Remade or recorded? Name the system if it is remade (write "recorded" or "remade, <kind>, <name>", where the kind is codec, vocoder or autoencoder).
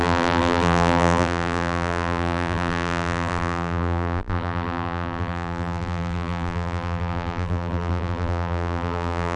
remade, vocoder, BigVGAN v2